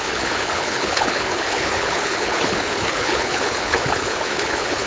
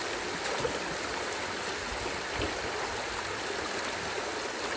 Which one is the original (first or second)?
second